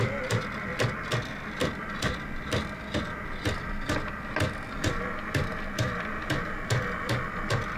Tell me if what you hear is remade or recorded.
recorded